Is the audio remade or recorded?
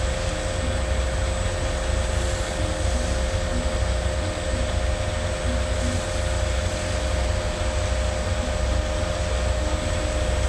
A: recorded